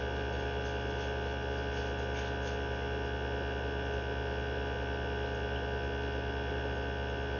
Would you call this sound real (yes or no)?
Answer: yes